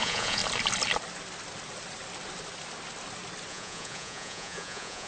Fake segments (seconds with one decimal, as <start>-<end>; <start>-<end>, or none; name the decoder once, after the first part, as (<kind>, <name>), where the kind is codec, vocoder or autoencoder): 0.0-0.4 (vocoder, Vocos); 3.5-5.1